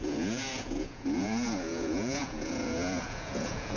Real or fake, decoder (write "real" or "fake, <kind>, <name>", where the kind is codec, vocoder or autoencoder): fake, vocoder, Vocos